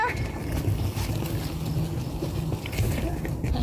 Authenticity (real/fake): real